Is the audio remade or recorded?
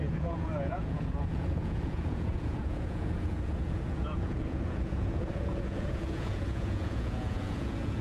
remade